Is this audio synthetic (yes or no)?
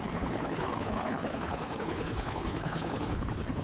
yes